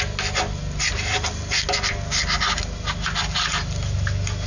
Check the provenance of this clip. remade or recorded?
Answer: recorded